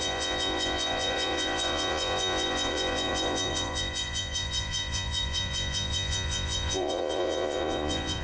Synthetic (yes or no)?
yes